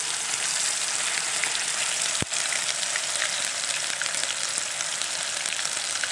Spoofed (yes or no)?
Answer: no